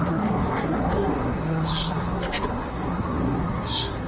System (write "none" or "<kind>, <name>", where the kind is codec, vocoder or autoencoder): codec, SNAC